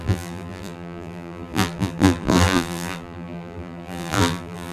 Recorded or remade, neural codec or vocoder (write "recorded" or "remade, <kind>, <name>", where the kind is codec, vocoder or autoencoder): remade, vocoder, BigVGAN v2